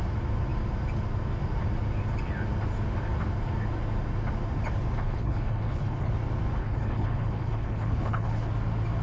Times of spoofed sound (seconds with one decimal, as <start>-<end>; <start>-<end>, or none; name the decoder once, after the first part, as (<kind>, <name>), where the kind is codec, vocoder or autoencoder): 5.0-6.1 (codec, HILCodec); 6.6-8.5